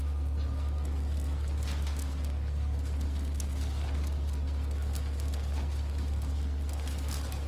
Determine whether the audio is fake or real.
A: fake